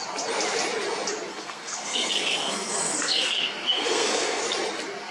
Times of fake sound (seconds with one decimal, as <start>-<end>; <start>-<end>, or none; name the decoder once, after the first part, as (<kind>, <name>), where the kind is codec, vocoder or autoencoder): 1.3-4.4 (codec, SNAC)